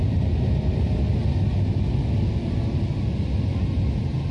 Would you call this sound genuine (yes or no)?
yes